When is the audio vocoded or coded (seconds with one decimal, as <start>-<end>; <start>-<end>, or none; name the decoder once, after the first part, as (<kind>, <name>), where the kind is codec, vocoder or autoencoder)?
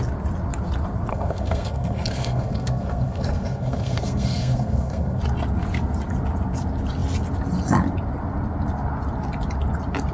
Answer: 1.1-5.2 (codec, SNAC)